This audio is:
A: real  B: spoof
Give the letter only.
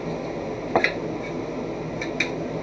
A